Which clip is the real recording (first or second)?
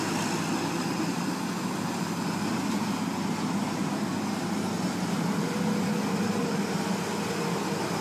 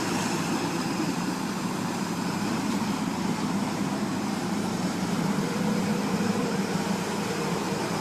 first